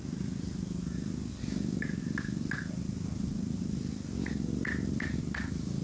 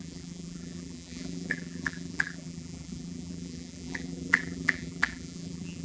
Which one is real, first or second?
first